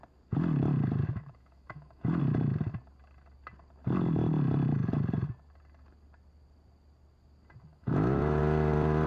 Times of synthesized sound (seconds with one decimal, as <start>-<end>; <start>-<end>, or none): 1.0-2.2; 7.7-8.4